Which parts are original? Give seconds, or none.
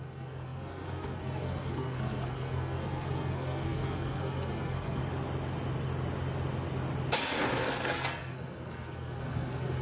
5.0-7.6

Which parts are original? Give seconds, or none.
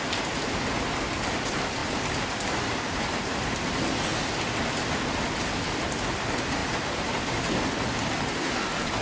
0.0-9.0